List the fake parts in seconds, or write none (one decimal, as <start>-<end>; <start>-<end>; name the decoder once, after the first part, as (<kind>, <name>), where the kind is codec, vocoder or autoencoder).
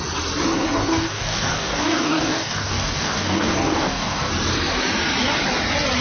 0.8-4.3 (codec, DAC)